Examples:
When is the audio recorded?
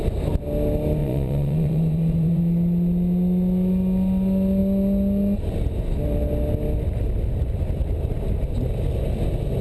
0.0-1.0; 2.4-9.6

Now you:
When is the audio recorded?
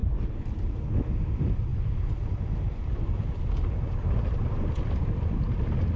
0.0-6.0